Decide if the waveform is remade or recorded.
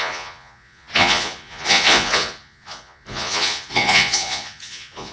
remade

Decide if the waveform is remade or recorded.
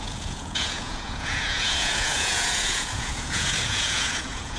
remade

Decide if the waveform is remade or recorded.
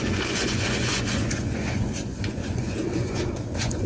remade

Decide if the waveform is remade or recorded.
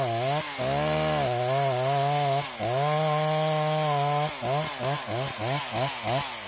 recorded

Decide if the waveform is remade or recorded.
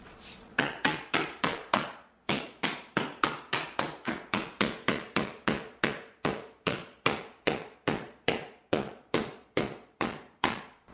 remade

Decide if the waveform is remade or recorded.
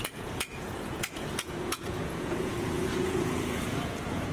remade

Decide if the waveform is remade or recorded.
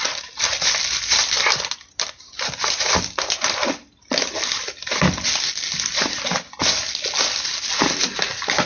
recorded